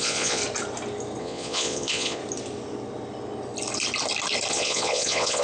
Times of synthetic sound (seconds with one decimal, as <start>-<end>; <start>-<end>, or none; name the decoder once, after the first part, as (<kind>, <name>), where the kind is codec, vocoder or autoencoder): 0.0-0.4 (vocoder, Vocos); 1.2-2.2; 4.5-5.4